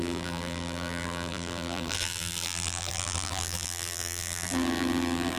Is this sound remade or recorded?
remade